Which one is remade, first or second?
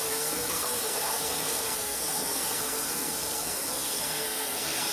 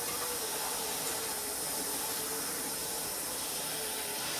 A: first